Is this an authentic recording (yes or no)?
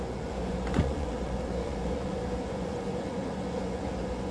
no